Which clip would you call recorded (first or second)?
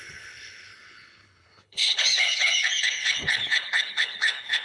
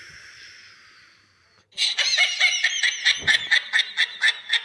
second